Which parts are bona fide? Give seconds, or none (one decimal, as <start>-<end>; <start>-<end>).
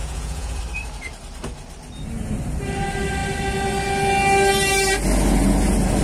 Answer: 0.6-6.0